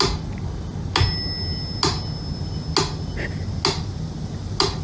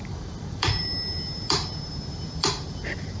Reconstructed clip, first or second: second